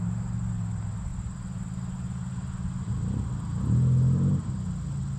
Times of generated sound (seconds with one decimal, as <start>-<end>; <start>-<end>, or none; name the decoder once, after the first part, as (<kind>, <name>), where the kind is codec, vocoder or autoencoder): none